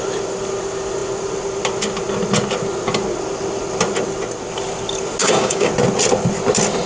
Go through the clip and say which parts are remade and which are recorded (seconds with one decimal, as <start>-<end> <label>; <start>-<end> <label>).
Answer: 0.0-5.2 recorded; 5.2-5.7 remade; 5.7-6.9 recorded